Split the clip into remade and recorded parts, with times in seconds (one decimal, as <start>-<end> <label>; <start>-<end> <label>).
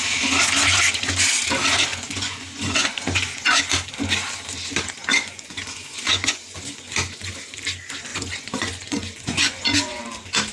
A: 0.0-1.9 recorded; 1.9-3.6 remade; 3.6-5.1 recorded; 5.1-7.3 remade; 7.3-8.1 recorded; 8.1-10.0 remade; 10.0-10.5 recorded